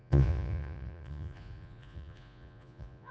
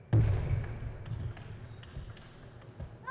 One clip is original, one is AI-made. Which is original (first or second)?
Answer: second